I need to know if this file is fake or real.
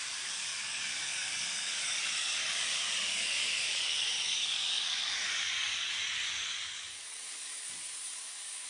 fake